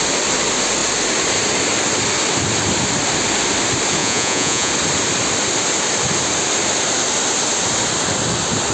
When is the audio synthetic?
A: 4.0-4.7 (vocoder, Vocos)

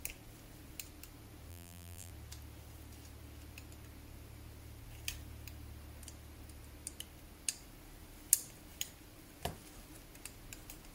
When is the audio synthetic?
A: 1.5-2.1 (vocoder, BigVGAN v2)